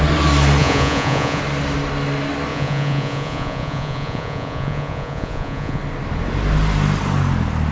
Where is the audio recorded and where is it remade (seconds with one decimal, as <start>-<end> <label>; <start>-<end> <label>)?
0.0-0.6 recorded; 0.6-1.4 remade; 1.4-2.5 recorded; 2.5-5.8 remade; 5.8-7.7 recorded